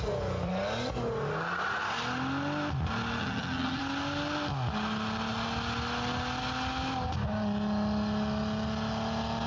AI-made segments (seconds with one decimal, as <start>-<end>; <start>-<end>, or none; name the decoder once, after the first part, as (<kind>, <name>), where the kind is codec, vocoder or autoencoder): 3.2-3.8 (vocoder, HiFi-GAN)